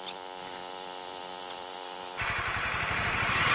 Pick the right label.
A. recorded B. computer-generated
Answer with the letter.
A